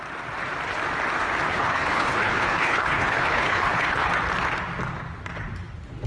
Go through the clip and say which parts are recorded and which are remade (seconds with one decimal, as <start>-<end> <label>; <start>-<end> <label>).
0.0-1.5 recorded; 1.5-4.1 remade; 4.1-6.1 recorded